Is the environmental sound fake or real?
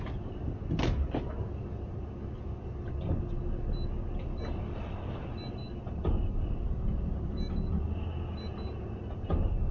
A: real